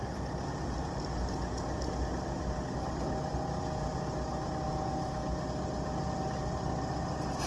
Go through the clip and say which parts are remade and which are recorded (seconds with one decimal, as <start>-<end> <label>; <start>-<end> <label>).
0.0-7.5 recorded